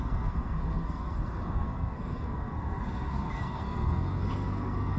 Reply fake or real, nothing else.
fake